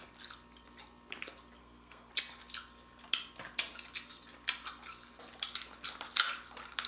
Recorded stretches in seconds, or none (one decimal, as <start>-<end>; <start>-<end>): 0.0-1.6; 2.1-6.9